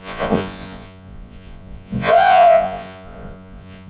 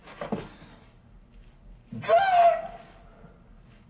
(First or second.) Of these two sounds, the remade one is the first